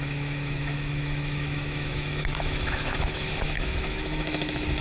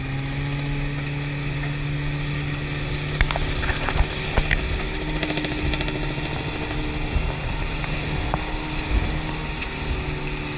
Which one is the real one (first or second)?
second